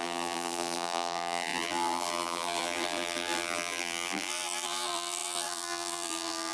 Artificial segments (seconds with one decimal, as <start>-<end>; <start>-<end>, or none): 0.0-6.5

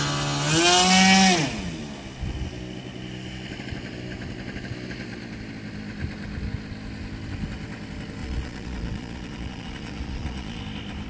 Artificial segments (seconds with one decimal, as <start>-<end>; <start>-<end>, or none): 8.2-10.6